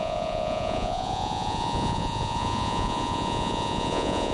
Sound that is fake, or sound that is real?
fake